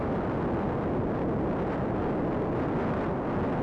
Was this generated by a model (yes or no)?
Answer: no